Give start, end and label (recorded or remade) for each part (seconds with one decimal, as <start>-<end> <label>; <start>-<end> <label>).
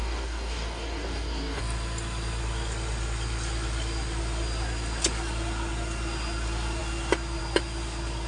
0.0-1.6 remade; 1.6-8.3 recorded